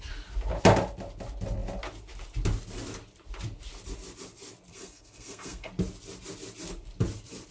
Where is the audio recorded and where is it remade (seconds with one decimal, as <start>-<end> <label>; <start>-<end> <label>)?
0.0-4.7 recorded; 4.7-5.7 remade; 5.7-7.5 recorded